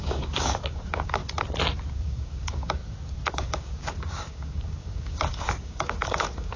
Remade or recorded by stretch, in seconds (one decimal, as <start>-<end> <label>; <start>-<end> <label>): 0.0-1.2 remade; 1.2-1.9 recorded; 1.9-2.8 remade; 2.8-3.3 recorded; 3.3-6.6 remade